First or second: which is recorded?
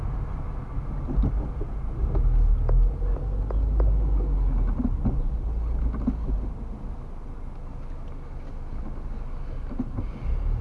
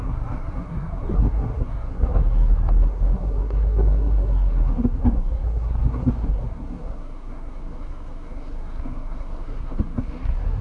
first